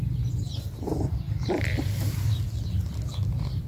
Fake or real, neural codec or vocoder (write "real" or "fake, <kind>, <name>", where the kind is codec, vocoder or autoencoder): fake, vocoder, BigVGAN v2